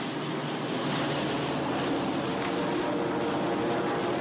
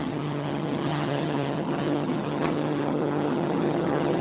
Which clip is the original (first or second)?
first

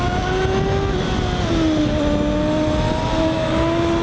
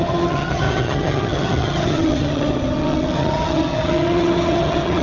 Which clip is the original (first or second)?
first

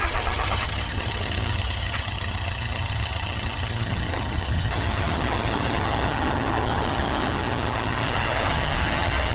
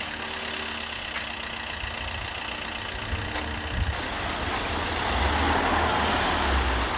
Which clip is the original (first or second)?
second